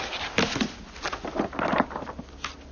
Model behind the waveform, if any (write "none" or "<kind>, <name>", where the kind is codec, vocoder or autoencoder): none